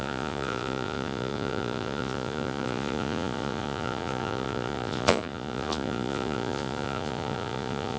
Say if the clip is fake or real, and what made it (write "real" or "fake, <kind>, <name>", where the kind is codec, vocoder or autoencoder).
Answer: fake, vocoder, Vocos